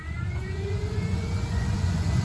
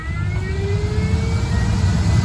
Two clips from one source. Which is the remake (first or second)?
first